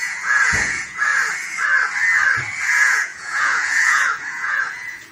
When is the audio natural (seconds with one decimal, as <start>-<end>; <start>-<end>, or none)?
1.1-2.7